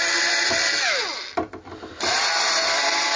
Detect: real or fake real